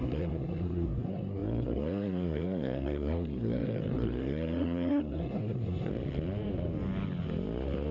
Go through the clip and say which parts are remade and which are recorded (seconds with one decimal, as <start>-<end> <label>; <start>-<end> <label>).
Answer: 0.0-5.9 remade; 5.9-7.9 recorded